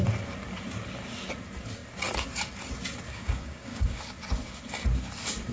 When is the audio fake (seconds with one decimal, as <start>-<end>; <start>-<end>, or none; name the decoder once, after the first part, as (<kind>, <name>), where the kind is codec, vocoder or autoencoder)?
3.1-4.0 (codec, DAC)